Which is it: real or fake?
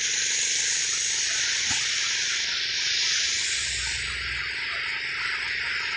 real